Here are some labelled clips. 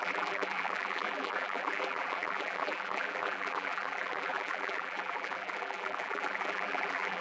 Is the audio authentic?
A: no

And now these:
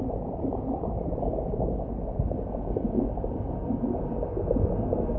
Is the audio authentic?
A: yes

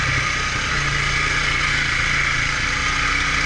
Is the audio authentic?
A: yes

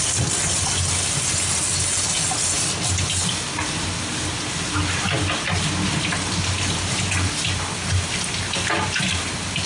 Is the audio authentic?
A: yes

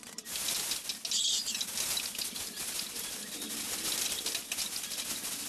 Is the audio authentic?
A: yes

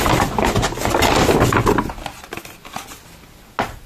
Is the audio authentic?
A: yes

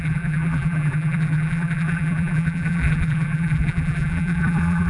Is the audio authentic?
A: no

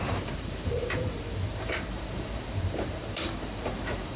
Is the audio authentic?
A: no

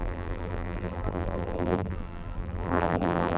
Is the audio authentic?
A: no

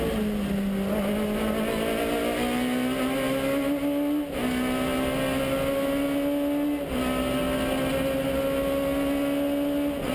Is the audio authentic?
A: yes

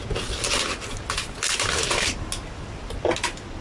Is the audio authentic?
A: yes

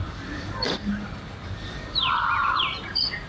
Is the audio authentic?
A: no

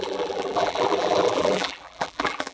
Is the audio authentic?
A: no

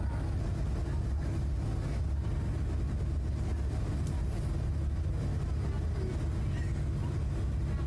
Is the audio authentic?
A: yes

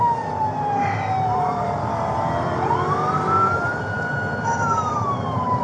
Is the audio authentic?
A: no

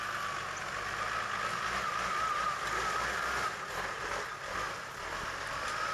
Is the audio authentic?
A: yes